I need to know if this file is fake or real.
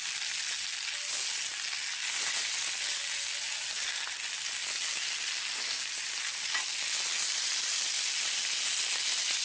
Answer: real